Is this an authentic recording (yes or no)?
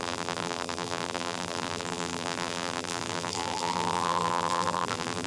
no